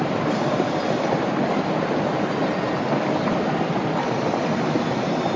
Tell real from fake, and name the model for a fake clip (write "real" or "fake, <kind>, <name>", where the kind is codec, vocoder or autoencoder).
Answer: real